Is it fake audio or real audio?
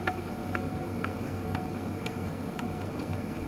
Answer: fake